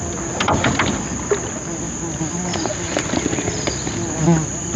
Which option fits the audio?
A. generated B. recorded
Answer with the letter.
B